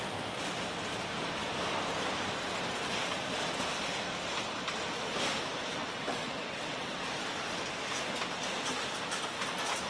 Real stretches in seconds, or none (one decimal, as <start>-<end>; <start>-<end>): 0.0-5.7; 7.0-9.9

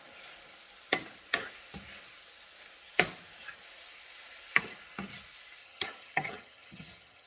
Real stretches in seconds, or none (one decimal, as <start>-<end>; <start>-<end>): 0.0-5.6

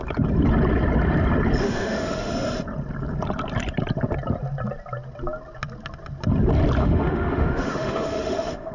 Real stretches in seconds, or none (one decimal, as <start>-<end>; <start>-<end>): 0.0-1.6; 2.3-6.8

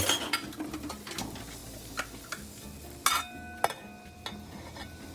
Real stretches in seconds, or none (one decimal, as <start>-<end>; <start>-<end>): 0.0-5.1

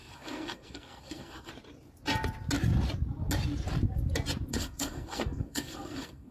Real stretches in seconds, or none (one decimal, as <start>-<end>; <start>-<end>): 1.5-4.5

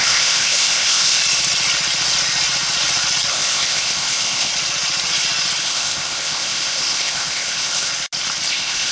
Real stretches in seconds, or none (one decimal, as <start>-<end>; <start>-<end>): 1.2-3.3; 4.5-5.6; 7.9-8.5